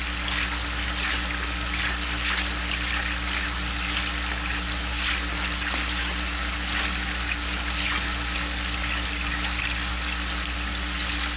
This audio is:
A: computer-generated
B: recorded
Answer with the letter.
B